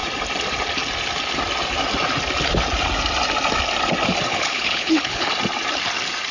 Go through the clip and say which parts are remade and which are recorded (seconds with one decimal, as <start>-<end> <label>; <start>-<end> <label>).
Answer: 0.0-4.3 recorded; 4.3-5.3 remade; 5.3-6.3 recorded